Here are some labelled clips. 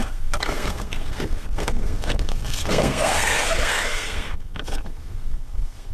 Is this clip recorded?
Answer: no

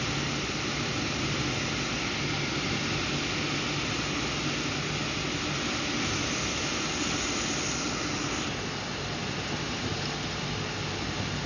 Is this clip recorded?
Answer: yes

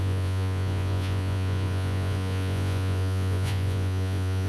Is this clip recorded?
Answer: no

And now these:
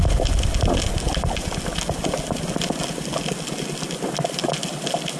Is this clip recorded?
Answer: yes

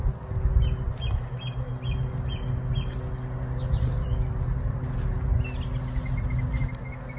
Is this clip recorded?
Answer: yes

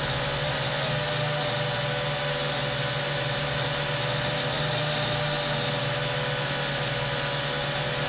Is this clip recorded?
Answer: yes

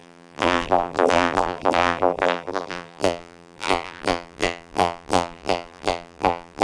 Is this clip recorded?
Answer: no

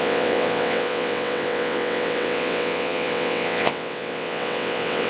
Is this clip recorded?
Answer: no